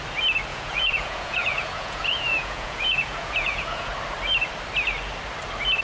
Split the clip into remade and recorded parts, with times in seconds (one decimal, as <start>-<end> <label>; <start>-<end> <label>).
0.0-0.5 recorded; 0.5-3.9 remade; 3.9-5.8 recorded